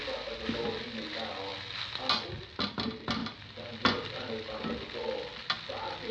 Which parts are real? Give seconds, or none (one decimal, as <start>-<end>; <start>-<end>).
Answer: 0.0-6.1